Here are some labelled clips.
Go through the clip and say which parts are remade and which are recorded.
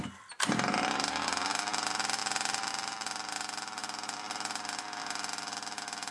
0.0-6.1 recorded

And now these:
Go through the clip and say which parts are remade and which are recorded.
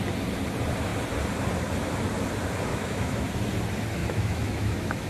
0.0-2.7 recorded; 2.7-3.2 remade; 3.2-4.0 recorded; 4.0-5.1 remade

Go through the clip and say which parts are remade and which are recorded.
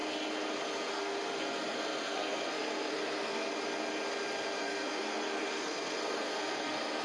0.0-0.9 recorded; 0.9-3.5 remade; 3.5-4.6 recorded; 4.6-7.0 remade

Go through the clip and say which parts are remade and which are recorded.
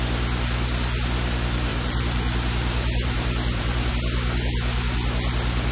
0.0-1.7 recorded; 1.7-3.9 remade; 3.9-5.7 recorded